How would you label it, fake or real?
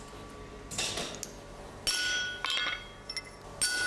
real